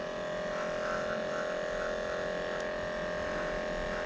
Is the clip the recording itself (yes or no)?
yes